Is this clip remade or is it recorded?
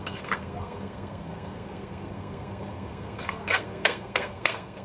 remade